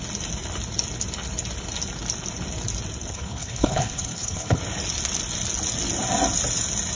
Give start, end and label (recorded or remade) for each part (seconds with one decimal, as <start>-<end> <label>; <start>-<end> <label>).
0.0-3.1 recorded; 3.1-4.6 remade; 4.6-6.9 recorded